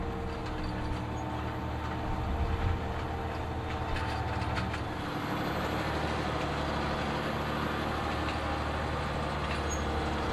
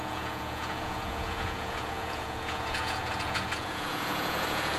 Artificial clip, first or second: second